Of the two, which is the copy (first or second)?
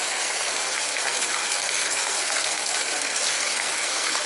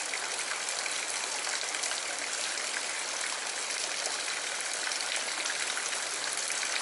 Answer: first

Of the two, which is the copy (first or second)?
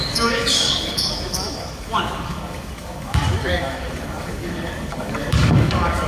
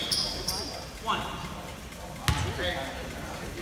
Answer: first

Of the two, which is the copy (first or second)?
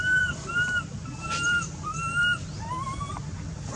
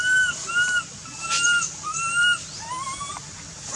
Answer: first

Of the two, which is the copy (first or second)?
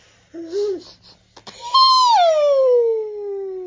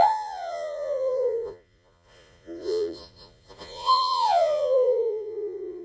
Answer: second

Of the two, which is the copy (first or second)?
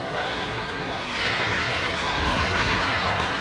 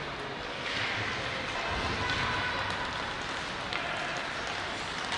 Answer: first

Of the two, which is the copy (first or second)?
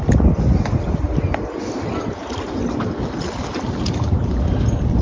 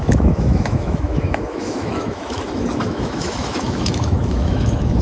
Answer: second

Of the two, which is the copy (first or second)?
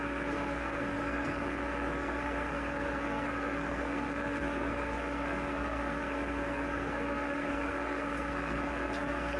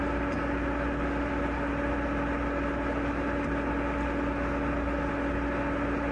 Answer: first